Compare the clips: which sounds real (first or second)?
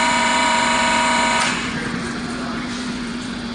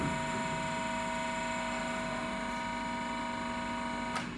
second